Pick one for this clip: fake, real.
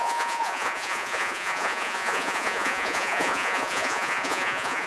fake